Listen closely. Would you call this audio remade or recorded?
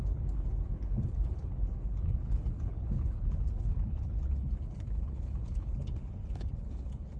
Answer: remade